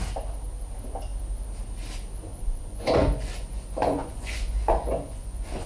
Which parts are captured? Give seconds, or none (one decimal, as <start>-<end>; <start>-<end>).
0.0-2.3